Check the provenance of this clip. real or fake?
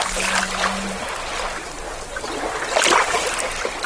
real